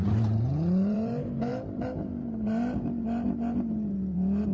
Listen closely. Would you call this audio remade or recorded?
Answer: remade